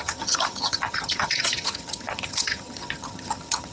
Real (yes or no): no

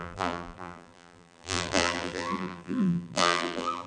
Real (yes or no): no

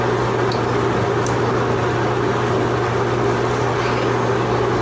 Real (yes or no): yes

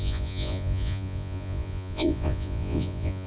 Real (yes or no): no